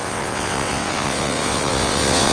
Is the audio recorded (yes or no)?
no